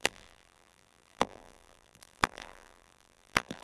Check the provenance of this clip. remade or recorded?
remade